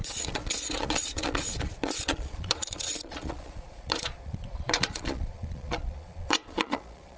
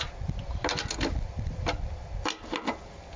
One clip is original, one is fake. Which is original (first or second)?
second